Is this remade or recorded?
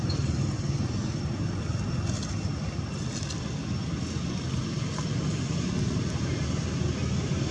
recorded